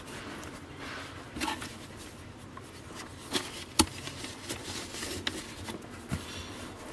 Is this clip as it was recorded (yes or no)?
yes